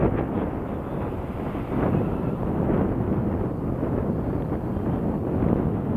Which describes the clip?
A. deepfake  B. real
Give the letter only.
B